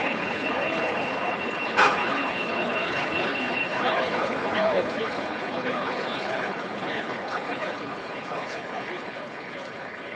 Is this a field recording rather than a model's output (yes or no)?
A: no